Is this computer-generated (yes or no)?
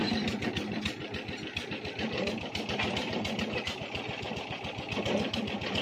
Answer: no